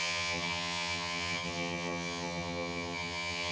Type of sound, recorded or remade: remade